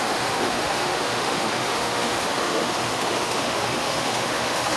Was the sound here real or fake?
fake